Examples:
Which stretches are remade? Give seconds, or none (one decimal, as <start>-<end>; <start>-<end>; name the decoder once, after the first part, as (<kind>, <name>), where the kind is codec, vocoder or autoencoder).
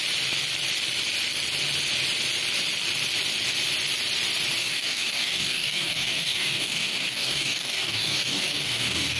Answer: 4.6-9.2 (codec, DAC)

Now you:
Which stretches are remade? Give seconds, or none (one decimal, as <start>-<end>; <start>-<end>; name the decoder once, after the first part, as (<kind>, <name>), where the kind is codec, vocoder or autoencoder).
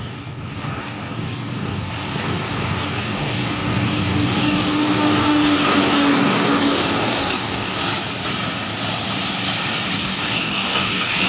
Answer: 0.0-7.8 (codec, DAC); 10.0-11.3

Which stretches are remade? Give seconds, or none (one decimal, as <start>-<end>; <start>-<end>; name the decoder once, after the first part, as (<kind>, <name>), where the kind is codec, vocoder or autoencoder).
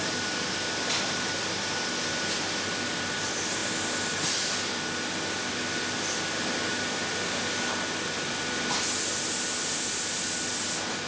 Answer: none